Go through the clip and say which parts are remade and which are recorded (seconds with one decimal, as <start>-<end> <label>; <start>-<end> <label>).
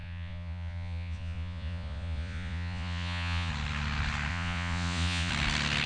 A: 0.0-3.5 remade; 3.5-4.3 recorded; 4.3-5.3 remade; 5.3-5.9 recorded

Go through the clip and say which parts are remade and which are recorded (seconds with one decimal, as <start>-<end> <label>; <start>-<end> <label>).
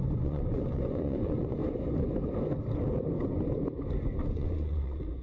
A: 0.0-1.6 remade; 1.6-4.3 recorded; 4.3-5.2 remade